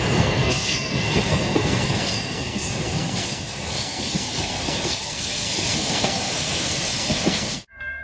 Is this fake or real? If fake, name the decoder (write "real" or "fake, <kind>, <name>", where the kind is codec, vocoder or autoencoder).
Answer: fake, codec, SNAC